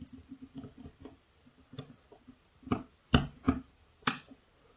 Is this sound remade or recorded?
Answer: recorded